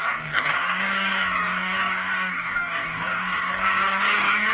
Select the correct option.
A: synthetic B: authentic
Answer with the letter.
A